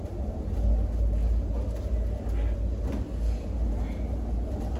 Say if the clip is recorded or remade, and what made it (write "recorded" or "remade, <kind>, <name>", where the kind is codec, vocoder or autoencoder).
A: recorded